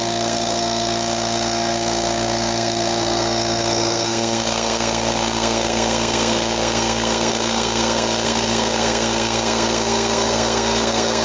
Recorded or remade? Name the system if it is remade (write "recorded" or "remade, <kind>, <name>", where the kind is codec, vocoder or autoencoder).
remade, codec, SNAC